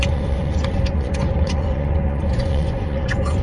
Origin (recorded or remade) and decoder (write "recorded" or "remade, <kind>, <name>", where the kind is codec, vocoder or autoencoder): remade, vocoder, Vocos